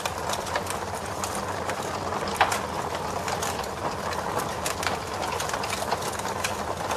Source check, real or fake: real